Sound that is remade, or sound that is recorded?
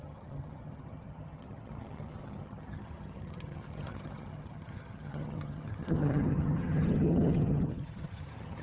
remade